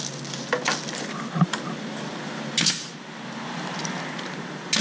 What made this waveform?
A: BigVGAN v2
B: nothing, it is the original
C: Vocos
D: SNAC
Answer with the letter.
B